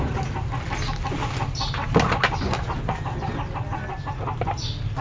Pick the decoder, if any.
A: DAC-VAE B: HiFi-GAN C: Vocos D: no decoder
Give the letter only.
D